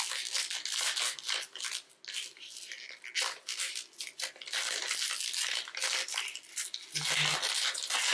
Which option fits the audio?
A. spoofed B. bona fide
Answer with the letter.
B